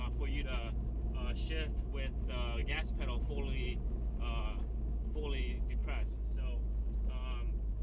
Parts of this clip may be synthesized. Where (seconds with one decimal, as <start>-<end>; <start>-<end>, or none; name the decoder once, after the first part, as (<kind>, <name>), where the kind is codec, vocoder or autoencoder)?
none